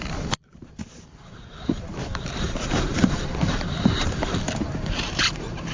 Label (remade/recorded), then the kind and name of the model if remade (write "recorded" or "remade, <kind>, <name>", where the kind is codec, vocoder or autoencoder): remade, vocoder, BigVGAN v2